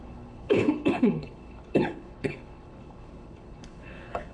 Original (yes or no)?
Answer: no